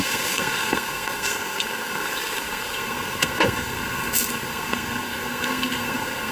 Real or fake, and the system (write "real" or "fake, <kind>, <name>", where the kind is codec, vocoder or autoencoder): fake, codec, SNAC